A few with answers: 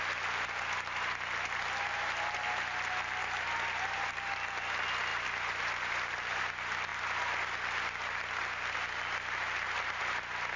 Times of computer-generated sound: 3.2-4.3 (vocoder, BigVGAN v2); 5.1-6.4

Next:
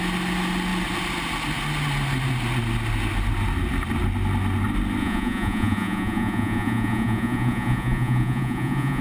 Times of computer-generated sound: 5.0-9.0 (vocoder, Vocos)

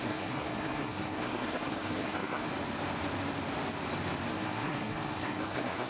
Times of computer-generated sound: 0.0-2.5 (codec, SNAC); 4.3-5.9

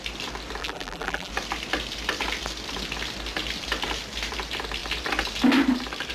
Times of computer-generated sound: 0.6-1.3 (vocoder, BigVGAN v2)